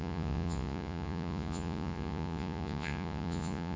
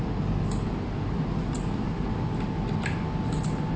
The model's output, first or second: first